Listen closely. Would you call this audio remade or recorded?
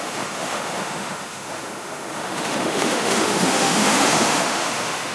remade